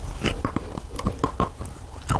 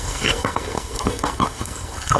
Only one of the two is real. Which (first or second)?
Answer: first